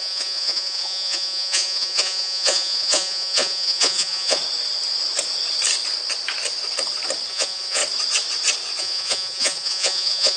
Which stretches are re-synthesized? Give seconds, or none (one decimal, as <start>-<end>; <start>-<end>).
0.0-4.4; 7.3-7.8; 8.8-10.4